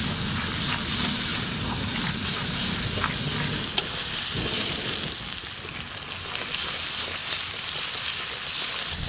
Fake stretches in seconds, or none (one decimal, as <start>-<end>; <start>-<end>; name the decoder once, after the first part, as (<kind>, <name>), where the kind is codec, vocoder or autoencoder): 1.3-3.0 (vocoder, BigVGAN v2); 7.2-7.8